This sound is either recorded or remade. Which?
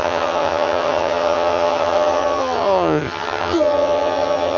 remade